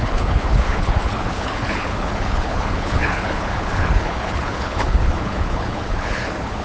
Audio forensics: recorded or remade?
remade